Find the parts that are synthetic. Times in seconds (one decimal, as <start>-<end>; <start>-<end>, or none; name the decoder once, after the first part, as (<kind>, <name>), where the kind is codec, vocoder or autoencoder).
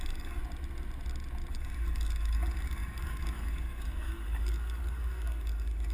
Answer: 0.0-0.4 (codec, DAC); 1.5-5.9